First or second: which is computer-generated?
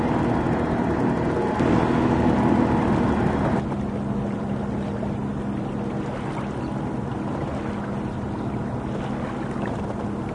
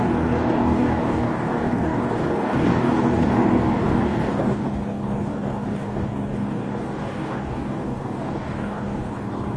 second